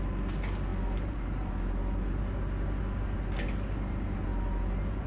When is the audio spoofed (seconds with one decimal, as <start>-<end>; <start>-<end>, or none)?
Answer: none